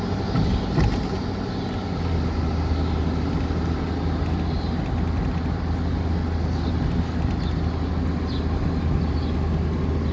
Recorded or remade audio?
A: recorded